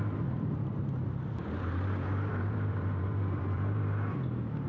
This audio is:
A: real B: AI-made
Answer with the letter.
B